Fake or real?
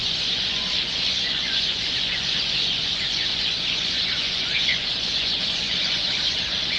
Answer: fake